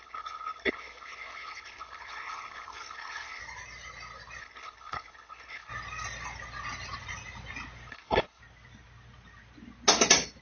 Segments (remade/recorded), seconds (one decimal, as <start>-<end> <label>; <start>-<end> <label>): 0.0-3.4 remade; 3.4-4.4 recorded; 4.4-5.7 remade; 5.7-7.9 recorded; 7.9-8.4 remade; 8.4-10.4 recorded